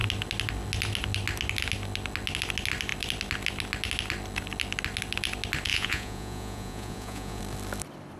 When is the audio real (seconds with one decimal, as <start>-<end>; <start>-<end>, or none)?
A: 0.0-5.7; 7.4-8.2